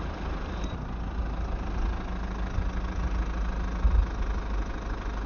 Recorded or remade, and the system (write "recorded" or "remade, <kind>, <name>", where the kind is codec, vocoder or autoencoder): recorded